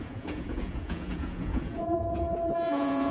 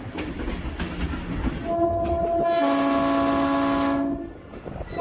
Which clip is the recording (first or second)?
second